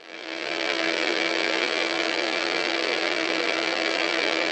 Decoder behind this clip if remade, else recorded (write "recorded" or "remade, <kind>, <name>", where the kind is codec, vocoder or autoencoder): remade, vocoder, BigVGAN v2